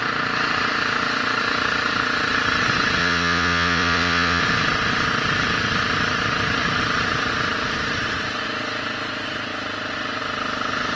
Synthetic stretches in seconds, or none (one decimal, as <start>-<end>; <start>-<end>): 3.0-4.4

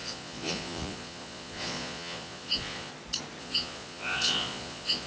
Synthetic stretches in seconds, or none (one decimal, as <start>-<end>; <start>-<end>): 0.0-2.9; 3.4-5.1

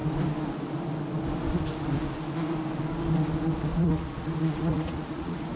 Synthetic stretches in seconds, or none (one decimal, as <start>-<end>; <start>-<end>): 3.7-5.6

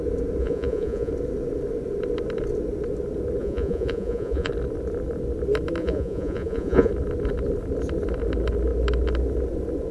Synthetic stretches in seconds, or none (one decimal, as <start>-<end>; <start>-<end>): 0.4-1.1; 3.4-4.5; 5.8-6.9

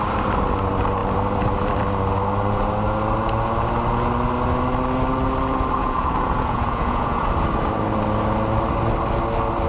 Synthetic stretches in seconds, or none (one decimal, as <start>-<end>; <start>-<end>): 5.8-7.3

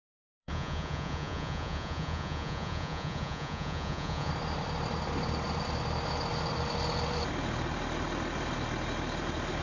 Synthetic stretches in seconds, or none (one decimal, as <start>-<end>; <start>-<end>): 0.0-4.3